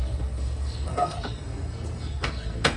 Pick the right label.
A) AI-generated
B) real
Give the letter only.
A